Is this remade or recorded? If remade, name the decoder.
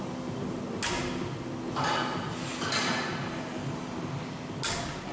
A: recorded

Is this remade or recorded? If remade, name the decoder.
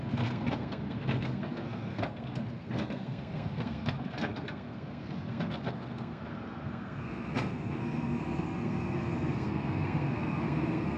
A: remade, codec, SNAC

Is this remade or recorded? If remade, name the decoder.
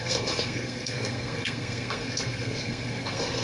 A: remade, codec, SNAC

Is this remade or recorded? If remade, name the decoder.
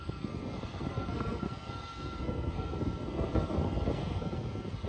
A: remade, codec, SNAC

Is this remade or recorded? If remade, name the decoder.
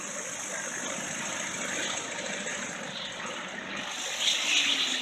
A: recorded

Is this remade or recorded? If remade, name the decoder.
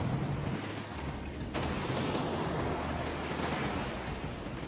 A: recorded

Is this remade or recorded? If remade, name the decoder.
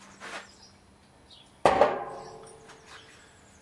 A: recorded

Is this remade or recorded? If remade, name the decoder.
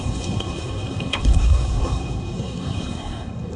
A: remade, codec, SNAC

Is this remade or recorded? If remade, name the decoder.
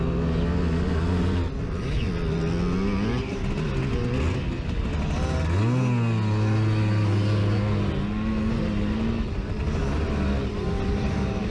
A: recorded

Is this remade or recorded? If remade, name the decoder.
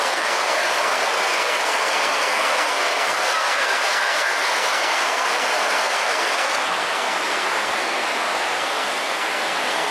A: remade, codec, SNAC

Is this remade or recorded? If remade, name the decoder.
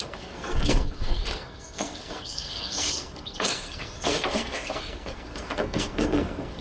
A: remade, codec, SNAC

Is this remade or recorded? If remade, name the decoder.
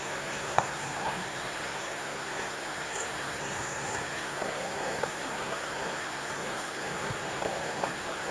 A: remade, codec, SNAC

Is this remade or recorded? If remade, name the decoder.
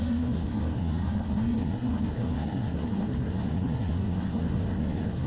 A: remade, codec, SNAC